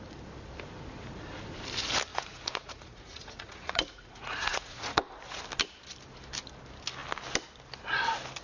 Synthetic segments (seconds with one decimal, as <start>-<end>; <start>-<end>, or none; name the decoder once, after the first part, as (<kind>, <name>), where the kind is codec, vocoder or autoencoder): 2.1-5.4 (vocoder, Vocos)